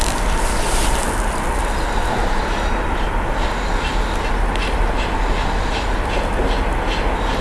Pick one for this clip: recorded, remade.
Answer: recorded